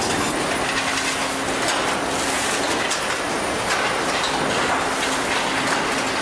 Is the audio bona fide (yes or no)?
yes